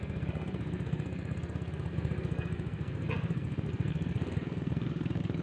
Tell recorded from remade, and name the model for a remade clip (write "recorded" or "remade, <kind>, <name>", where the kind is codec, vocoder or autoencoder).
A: remade, codec, SNAC